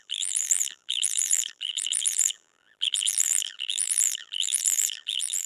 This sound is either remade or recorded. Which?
remade